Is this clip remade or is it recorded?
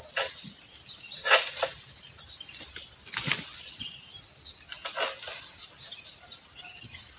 recorded